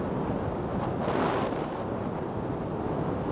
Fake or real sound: real